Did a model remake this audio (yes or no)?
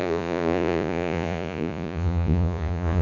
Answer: yes